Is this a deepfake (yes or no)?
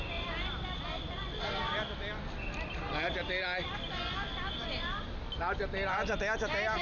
no